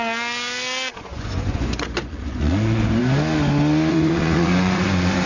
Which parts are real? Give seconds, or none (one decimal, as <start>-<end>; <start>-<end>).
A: 0.0-0.9; 3.0-3.9